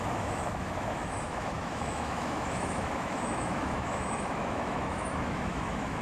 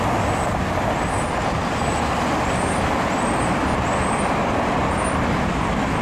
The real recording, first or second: second